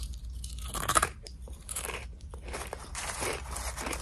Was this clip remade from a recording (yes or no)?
yes